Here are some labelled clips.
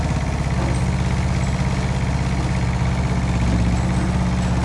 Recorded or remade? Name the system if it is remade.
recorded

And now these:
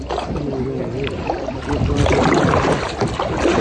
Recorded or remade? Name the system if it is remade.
recorded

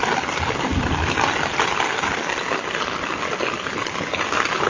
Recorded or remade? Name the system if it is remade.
recorded